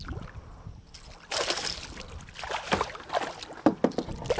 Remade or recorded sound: recorded